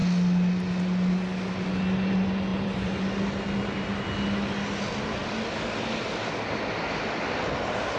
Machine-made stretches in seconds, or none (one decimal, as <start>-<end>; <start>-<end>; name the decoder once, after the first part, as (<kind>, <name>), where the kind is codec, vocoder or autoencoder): 2.5-3.1 (vocoder, BigVGAN v2)